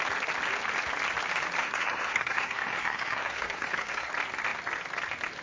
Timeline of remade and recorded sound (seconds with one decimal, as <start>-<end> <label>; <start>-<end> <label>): 0.0-1.6 recorded; 1.6-4.1 remade; 4.1-5.4 recorded